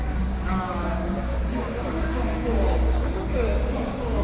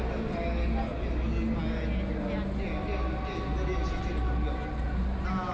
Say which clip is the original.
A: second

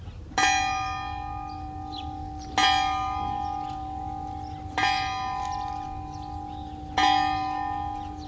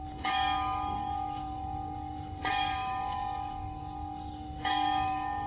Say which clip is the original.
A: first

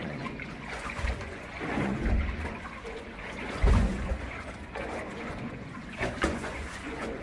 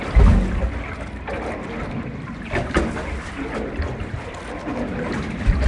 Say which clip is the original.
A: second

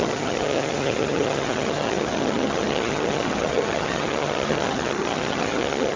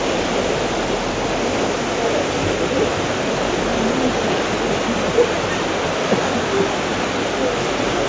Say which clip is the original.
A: second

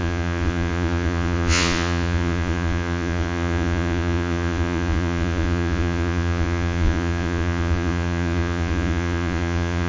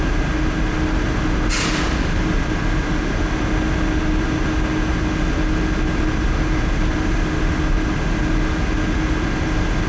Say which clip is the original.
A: second